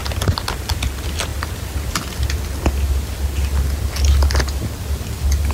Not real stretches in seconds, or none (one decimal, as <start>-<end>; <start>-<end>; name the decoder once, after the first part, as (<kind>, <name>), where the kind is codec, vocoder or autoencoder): none